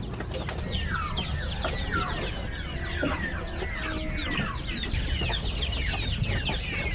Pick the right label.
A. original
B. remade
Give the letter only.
A